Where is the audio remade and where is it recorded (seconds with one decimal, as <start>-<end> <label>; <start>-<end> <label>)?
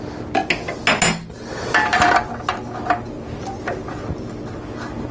0.0-5.1 recorded